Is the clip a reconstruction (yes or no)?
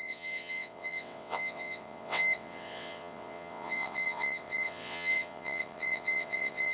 yes